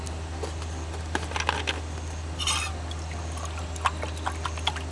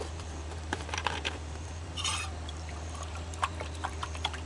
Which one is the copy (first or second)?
second